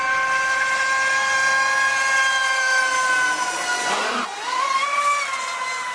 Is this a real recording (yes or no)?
yes